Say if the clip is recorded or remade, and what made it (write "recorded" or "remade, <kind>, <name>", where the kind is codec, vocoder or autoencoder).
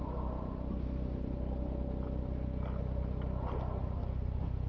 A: recorded